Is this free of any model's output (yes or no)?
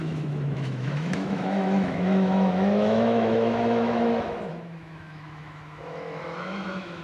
no